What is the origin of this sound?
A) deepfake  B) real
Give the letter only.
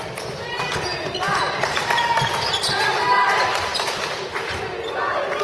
A